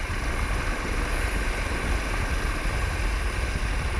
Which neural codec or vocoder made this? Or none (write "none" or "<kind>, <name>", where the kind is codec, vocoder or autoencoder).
none